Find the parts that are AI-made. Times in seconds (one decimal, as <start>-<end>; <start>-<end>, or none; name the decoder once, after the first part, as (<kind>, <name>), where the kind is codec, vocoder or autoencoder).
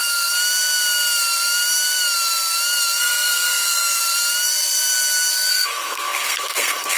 3.0-4.0 (codec, SNAC); 5.5-7.0